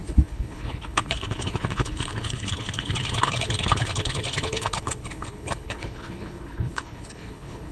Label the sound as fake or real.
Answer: fake